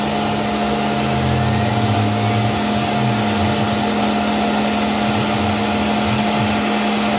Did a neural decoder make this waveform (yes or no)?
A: no